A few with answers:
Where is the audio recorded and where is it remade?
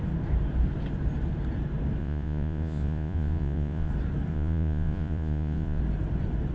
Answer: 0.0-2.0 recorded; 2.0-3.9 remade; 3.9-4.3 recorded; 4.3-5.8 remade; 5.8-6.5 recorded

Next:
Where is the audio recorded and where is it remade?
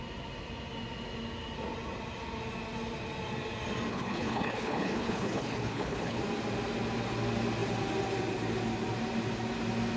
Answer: 0.0-3.9 recorded; 3.9-6.2 remade; 6.2-10.0 recorded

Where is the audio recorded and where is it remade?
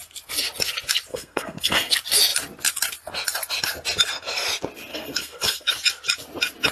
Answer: 0.0-1.1 recorded; 1.1-1.9 remade; 1.9-4.9 recorded; 4.9-5.7 remade; 5.7-6.7 recorded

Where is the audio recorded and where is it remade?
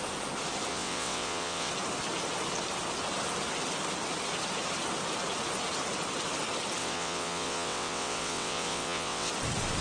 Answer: 0.0-0.7 recorded; 0.7-1.7 remade; 1.7-6.8 recorded; 6.8-9.3 remade; 9.3-9.8 recorded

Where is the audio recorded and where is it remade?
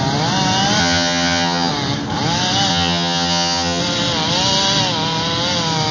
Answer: 0.0-0.8 recorded; 0.8-1.7 remade; 1.7-2.7 recorded; 2.7-3.8 remade; 3.8-5.9 recorded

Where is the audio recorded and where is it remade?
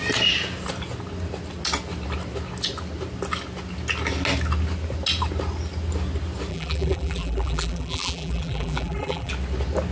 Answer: 0.0-6.5 recorded; 6.5-9.3 remade; 9.3-9.9 recorded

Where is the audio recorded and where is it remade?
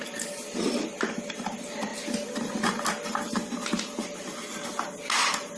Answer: 0.0-5.6 recorded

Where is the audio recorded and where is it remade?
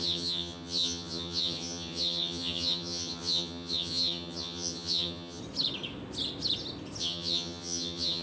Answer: 0.0-5.4 remade; 5.4-7.0 recorded; 7.0-8.2 remade